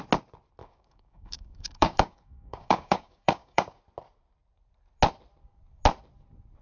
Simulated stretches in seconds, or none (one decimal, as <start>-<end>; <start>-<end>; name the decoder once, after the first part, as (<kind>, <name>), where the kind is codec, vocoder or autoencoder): 0.6-3.8 (codec, DAC)